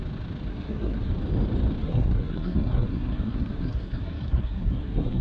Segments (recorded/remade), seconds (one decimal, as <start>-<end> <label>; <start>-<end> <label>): 0.0-0.5 recorded; 0.5-1.1 remade; 1.1-1.8 recorded; 1.8-5.2 remade